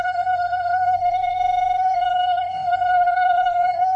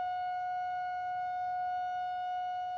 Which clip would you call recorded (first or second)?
second